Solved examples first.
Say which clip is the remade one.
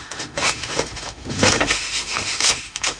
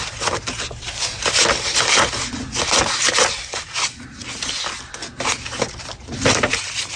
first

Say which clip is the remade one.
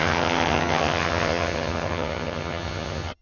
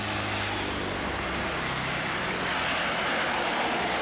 first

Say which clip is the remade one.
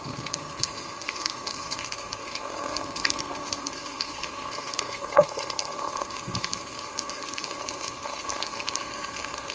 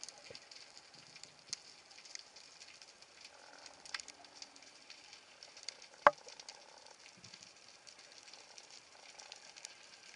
first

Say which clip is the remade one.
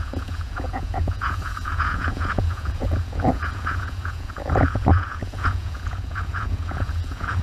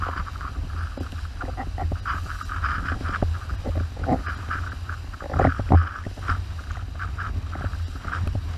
first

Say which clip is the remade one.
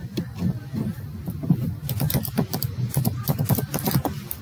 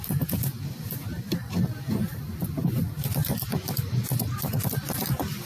second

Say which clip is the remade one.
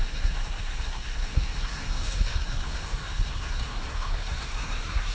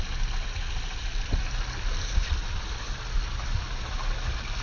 first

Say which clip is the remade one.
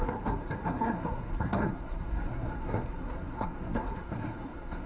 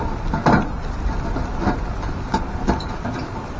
first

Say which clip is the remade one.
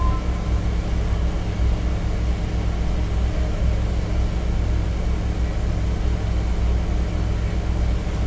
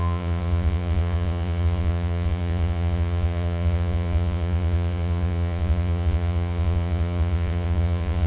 second